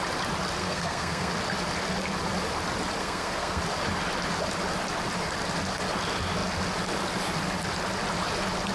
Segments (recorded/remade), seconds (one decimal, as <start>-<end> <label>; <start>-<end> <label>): 0.0-0.6 recorded; 0.6-1.3 remade; 1.3-3.0 recorded; 3.0-3.6 remade; 3.6-8.7 recorded